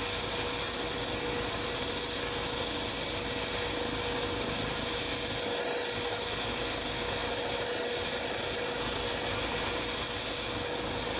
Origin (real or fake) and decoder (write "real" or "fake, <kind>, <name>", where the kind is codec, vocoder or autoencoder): real